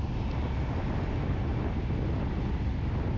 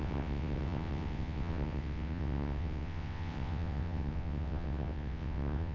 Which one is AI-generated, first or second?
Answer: second